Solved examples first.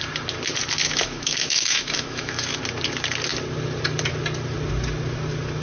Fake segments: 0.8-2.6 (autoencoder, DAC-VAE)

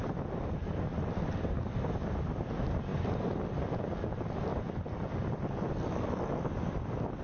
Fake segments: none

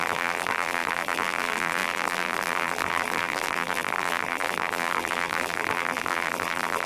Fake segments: 0.0-6.9 (vocoder, BigVGAN v2)